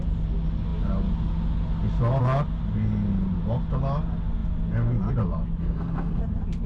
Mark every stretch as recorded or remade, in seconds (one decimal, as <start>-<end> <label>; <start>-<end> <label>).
0.0-5.6 recorded; 5.6-6.2 remade; 6.2-6.7 recorded